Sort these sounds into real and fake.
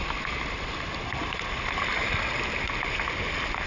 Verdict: real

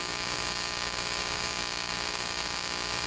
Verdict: fake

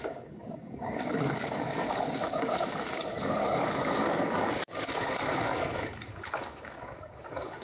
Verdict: fake